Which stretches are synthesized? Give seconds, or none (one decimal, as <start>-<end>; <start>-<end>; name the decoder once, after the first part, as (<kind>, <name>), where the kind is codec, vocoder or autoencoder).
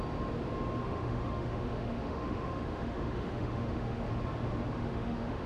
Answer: 0.8-4.1 (autoencoder, DAC-VAE); 4.7-5.5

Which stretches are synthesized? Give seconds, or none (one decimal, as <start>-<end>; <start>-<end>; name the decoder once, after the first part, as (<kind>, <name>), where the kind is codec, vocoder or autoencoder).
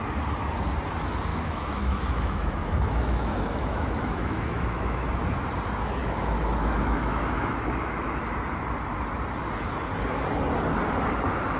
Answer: 1.3-5.1 (autoencoder, DAC-VAE); 6.0-8.2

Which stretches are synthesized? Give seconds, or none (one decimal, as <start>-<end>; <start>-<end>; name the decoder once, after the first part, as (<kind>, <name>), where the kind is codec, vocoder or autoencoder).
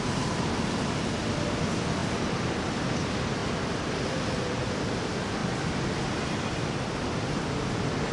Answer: none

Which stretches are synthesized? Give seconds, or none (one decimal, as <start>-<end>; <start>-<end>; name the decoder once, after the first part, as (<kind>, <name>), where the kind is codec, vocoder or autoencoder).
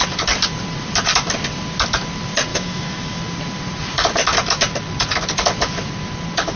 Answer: 2.5-3.2 (autoencoder, DAC-VAE)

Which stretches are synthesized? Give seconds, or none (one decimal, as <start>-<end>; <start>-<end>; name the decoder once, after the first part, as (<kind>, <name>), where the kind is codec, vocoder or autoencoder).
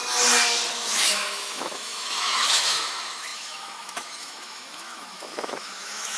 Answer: 0.7-6.2 (autoencoder, DAC-VAE)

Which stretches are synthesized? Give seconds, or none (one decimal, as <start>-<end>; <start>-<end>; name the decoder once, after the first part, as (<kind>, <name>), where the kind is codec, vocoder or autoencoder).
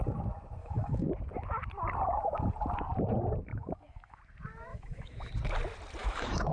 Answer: 0.6-1.1 (autoencoder, DAC-VAE); 3.5-4.2; 4.7-5.3; 6.0-6.5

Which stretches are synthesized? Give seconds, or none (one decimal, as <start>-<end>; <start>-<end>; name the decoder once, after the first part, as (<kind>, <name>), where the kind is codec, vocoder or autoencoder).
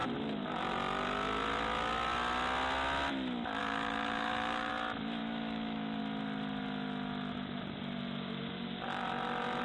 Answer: 3.6-4.7 (autoencoder, DAC-VAE); 5.2-6.0